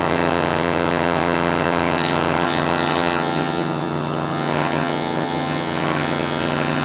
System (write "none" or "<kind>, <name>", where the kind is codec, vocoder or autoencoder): vocoder, HiFi-GAN